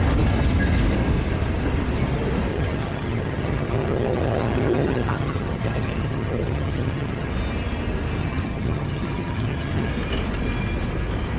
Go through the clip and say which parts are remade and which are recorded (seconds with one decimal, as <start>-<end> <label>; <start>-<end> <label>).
0.0-2.5 recorded; 2.5-7.3 remade; 7.3-8.2 recorded; 8.2-9.9 remade; 9.9-11.4 recorded